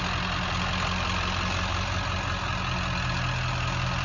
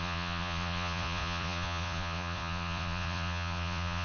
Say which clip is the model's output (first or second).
second